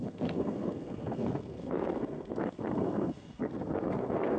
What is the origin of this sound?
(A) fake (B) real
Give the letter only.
A